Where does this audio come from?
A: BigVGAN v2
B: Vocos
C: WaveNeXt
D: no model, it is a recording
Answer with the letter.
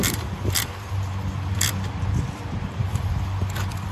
A